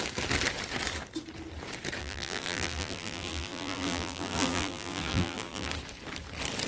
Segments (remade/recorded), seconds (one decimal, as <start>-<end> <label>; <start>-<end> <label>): 0.0-2.0 recorded; 2.0-5.7 remade; 5.7-6.7 recorded